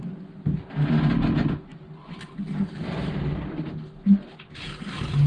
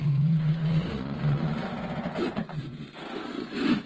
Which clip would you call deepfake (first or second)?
second